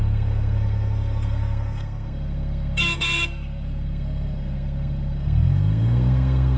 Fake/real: fake